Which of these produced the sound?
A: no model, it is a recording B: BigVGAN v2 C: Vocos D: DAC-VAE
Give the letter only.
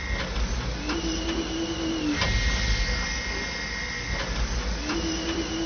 A